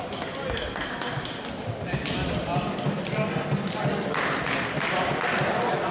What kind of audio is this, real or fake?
real